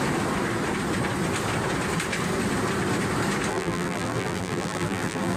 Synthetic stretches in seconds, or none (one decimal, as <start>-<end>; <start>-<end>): 3.5-5.4